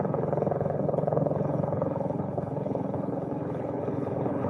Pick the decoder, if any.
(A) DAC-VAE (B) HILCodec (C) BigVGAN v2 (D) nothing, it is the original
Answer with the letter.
B